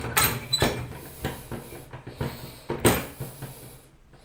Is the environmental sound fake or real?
real